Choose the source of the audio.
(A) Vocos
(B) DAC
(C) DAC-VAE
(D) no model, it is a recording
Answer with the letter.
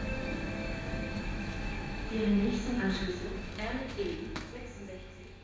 C